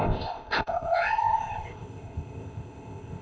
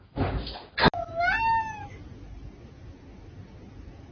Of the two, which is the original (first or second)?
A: second